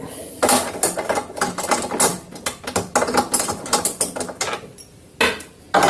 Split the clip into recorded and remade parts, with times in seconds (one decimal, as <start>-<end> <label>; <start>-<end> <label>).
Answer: 0.0-5.9 recorded